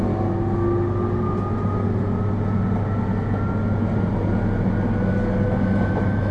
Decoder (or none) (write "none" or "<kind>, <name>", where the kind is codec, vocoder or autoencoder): none